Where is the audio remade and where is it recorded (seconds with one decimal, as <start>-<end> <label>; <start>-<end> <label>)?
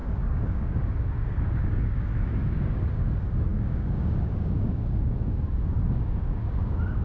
0.0-7.0 remade